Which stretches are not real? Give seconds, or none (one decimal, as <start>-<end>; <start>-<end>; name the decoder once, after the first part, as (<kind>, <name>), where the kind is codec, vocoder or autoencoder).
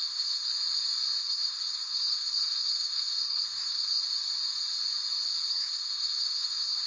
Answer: 0.0-0.5 (codec, SNAC); 1.2-4.0; 5.5-6.9